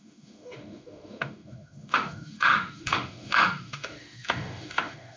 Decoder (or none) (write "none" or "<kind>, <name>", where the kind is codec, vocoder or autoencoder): autoencoder, DAC-VAE